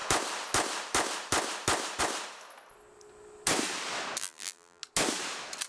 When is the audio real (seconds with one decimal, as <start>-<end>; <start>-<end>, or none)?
0.0-4.2; 4.8-5.7